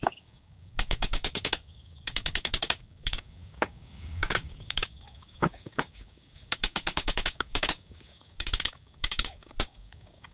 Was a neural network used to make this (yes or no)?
yes